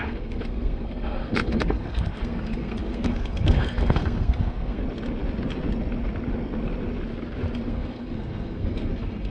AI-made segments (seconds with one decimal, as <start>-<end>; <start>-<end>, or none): 0.0-4.8; 7.7-9.3